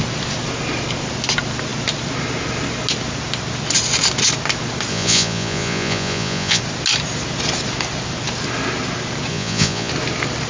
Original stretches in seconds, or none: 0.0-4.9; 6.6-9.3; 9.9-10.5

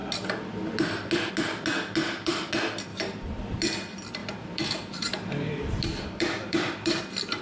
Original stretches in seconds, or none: 0.0-2.0; 2.5-2.9; 3.4-4.2; 7.0-7.4

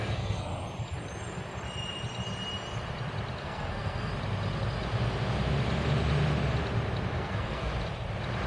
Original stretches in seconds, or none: 0.5-3.4; 4.1-7.1; 7.7-8.5

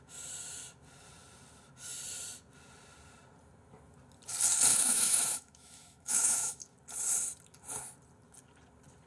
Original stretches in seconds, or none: 0.0-4.7; 6.6-9.1

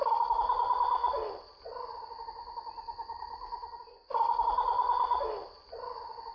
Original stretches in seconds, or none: 0.0-6.3

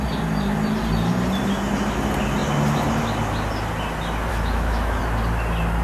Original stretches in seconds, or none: 0.0-4.3; 5.0-5.8

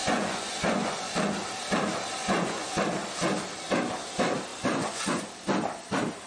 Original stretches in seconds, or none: 1.1-2.2; 2.8-4.5; 5.2-6.3